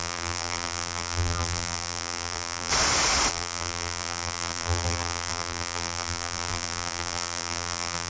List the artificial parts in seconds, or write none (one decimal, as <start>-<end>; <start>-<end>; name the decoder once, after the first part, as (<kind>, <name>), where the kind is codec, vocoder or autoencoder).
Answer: 0.0-2.7 (vocoder, BigVGAN v2); 3.3-8.1